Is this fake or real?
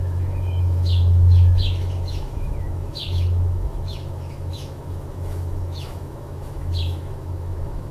fake